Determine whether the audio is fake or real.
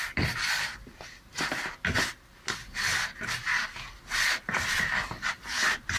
real